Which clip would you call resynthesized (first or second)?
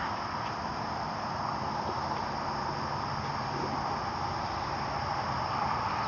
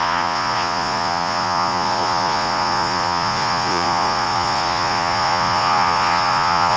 second